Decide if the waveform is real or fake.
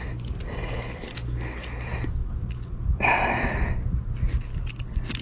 real